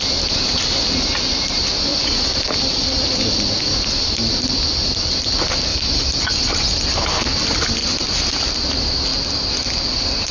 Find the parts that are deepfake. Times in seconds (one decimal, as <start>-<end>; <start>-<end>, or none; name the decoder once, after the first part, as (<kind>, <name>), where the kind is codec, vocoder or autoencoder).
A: 5.7-6.9 (vocoder, BigVGAN v2); 7.8-8.6; 9.1-9.9